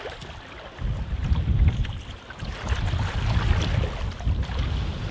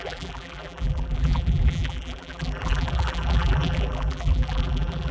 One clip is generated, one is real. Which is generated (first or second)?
second